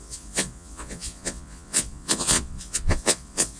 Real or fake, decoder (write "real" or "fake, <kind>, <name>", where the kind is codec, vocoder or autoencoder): fake, vocoder, Vocos